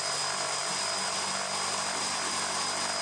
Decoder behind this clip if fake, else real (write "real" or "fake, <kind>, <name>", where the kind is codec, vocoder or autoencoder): real